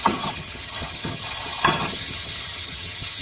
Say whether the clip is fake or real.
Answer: fake